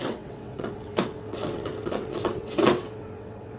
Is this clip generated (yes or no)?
yes